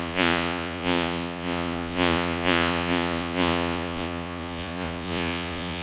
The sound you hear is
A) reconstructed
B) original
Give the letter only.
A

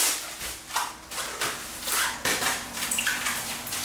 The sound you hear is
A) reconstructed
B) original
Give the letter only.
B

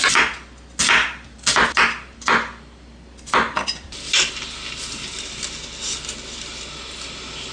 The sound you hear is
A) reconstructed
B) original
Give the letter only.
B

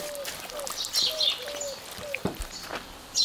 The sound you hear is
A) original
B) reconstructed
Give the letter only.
A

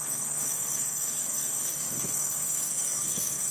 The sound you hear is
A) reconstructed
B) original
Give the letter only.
A